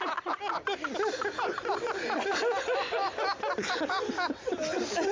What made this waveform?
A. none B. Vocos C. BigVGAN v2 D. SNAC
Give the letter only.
A